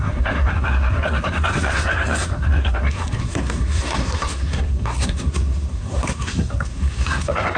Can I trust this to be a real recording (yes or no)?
no